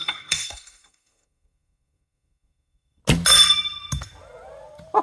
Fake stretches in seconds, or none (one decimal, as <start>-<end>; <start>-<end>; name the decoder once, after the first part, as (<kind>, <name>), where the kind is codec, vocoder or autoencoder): 0.0-3.0 (codec, SNAC)